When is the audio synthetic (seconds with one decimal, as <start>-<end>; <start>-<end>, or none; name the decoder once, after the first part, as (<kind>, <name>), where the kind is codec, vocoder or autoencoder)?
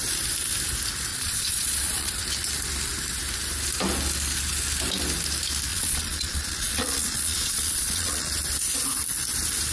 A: 1.1-2.2 (vocoder, Vocos); 5.7-8.3